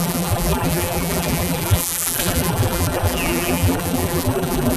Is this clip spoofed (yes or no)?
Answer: yes